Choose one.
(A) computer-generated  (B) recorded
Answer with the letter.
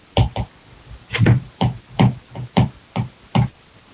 B